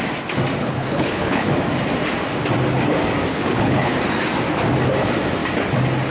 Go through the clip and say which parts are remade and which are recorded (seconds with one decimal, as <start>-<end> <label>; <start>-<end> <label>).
0.0-0.6 recorded; 0.6-1.5 remade; 1.5-3.3 recorded; 3.3-3.9 remade; 3.9-6.1 recorded